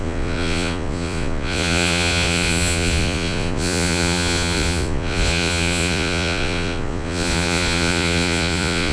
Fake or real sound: fake